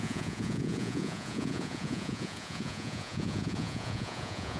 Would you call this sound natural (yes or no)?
no